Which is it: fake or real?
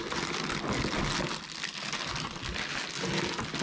real